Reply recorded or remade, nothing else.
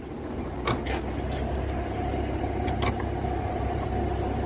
recorded